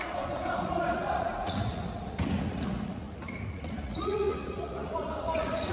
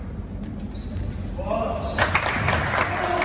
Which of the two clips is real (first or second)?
second